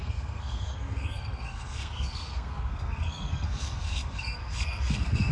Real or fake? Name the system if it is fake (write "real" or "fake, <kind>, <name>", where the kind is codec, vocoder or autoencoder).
fake, codec, SNAC